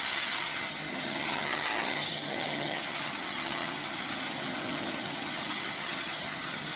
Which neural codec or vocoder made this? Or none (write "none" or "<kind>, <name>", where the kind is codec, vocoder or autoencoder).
vocoder, HiFi-GAN